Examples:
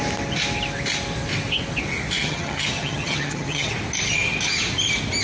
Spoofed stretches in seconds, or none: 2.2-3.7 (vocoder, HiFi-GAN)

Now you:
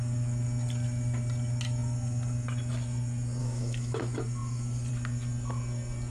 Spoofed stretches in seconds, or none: 3.4-4.0 (autoencoder, DAC-VAE)

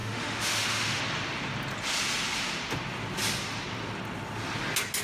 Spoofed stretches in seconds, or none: 0.0-1.0 (autoencoder, DAC-VAE)

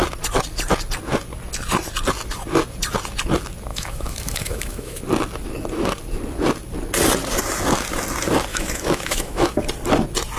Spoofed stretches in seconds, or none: 3.7-5.0 (autoencoder, DAC-VAE); 8.5-9.6

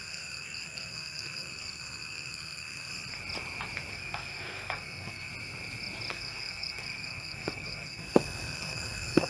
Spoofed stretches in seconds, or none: 0.0-2.9 (codec, SNAC); 3.9-5.3; 6.1-9.3

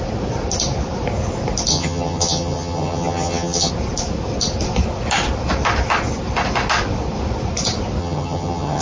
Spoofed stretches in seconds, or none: 1.7-3.7 (vocoder, HiFi-GAN); 8.0-8.8

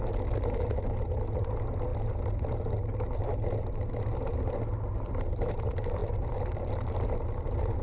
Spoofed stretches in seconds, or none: none

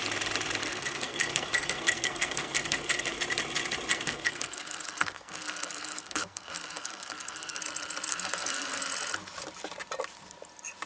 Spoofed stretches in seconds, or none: 0.6-3.2 (codec, SNAC); 3.9-7.6; 8.1-8.8